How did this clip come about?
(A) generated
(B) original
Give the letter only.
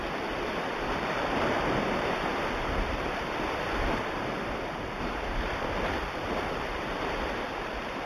A